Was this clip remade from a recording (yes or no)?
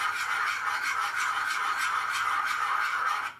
no